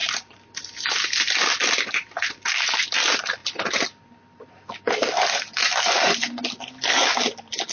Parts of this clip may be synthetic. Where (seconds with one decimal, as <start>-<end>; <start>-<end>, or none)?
none